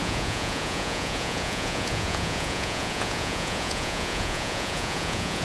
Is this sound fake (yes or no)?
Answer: yes